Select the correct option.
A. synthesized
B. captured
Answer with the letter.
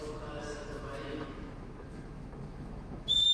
A